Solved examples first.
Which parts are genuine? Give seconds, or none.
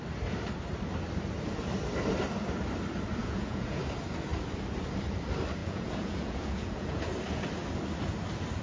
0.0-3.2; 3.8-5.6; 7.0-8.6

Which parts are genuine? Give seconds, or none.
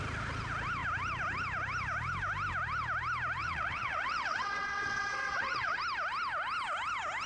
0.0-3.4; 5.8-7.3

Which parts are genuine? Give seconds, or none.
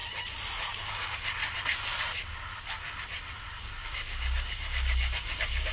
0.0-0.9; 1.4-3.6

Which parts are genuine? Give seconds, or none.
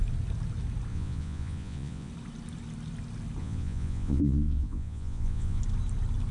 0.0-0.9; 2.1-3.4; 5.6-6.3